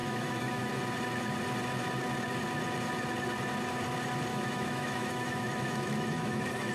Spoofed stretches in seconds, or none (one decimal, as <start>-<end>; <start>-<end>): 0.0-0.7; 4.3-6.7